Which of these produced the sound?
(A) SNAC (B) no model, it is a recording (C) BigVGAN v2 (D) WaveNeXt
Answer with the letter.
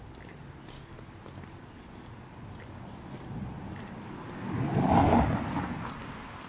B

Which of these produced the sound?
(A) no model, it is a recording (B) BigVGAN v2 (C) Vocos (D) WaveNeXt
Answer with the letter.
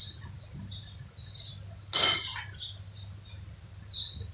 A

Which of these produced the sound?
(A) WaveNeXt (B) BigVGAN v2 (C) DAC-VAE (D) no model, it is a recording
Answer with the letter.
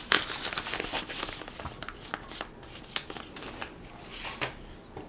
D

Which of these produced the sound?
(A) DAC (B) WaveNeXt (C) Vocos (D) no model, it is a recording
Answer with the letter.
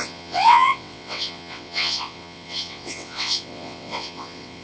B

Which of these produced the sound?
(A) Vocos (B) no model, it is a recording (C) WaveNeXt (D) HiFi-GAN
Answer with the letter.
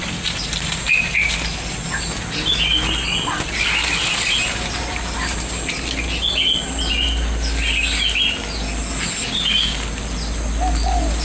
B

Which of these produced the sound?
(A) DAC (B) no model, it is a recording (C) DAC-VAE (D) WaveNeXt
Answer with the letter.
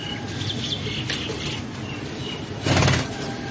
B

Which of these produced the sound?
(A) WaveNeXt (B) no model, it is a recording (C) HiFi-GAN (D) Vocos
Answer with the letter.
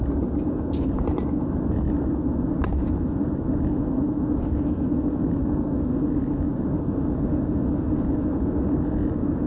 B